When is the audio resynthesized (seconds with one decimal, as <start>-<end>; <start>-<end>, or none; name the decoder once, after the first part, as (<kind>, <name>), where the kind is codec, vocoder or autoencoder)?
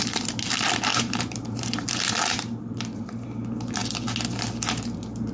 0.9-2.1 (vocoder, BigVGAN v2)